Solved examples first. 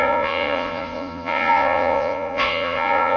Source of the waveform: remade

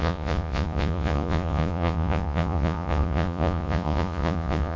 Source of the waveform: remade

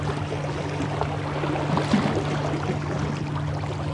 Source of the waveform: recorded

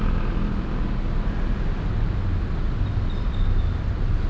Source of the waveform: recorded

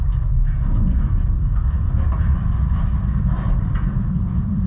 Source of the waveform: recorded